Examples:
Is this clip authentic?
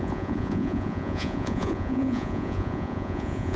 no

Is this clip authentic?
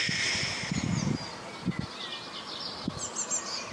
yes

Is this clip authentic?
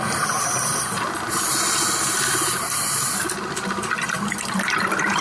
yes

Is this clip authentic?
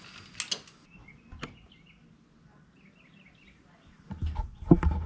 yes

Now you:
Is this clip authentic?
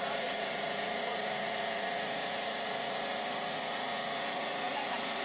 no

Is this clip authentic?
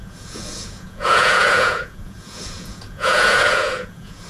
no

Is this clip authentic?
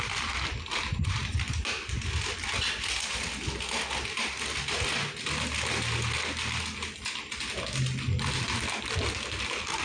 yes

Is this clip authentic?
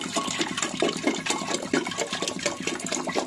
yes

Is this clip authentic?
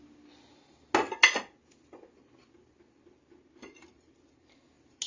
yes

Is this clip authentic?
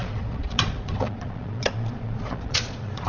no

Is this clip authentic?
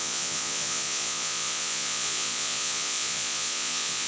no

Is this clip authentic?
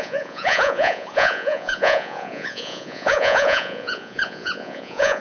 no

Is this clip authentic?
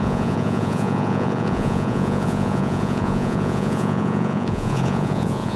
no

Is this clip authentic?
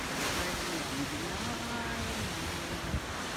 yes